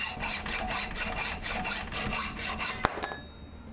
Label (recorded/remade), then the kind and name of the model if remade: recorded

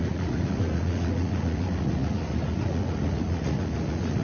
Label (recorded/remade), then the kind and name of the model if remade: remade, vocoder, Vocos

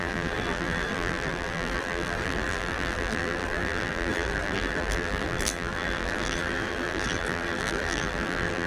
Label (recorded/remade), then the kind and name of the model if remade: remade, vocoder, BigVGAN v2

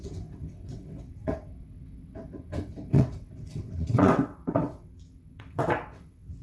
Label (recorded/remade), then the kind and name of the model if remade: remade, vocoder, WaveNeXt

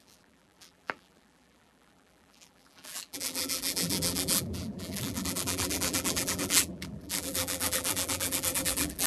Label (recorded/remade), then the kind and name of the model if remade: remade, vocoder, BigVGAN v2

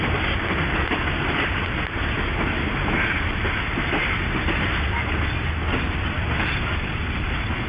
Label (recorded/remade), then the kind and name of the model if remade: recorded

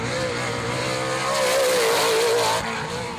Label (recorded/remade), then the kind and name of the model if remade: recorded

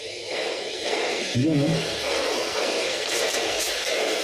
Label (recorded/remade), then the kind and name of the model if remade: remade, codec, SNAC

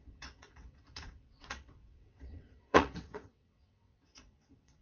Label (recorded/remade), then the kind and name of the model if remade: remade, vocoder, WaveNeXt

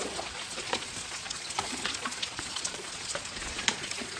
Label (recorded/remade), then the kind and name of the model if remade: remade, vocoder, Vocos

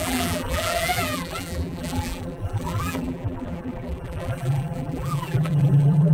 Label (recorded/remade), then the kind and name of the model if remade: remade, vocoder, BigVGAN v2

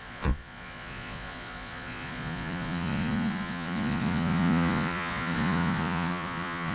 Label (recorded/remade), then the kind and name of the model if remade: remade, vocoder, Vocos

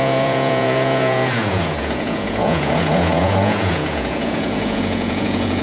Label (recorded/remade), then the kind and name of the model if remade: remade, vocoder, Vocos